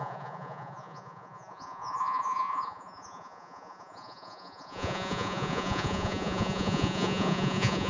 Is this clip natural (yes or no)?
no